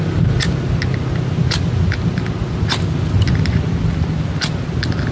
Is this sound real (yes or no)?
yes